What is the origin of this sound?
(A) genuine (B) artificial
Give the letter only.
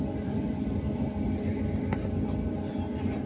A